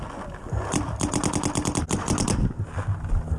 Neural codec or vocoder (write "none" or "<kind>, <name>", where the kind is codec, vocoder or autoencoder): none